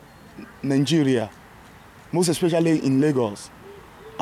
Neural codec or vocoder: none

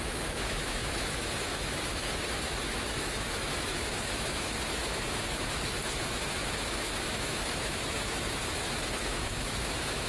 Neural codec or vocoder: autoencoder, DAC-VAE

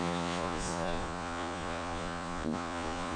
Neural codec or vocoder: vocoder, Vocos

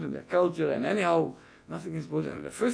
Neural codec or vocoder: vocoder, WaveNeXt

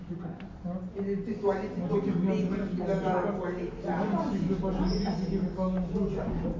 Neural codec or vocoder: none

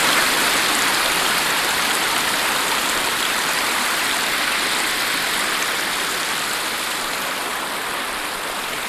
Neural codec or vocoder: none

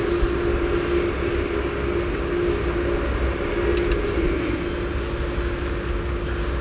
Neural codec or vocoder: none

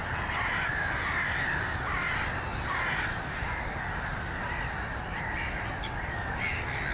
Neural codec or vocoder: none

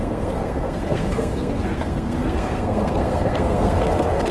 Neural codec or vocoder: codec, SNAC